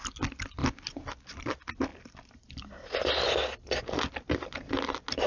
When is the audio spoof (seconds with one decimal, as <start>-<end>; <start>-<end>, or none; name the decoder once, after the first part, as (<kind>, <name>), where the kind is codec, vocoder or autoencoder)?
none